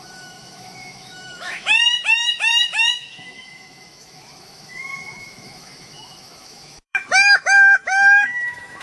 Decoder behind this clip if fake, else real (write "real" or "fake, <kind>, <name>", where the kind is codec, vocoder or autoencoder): fake, autoencoder, DAC-VAE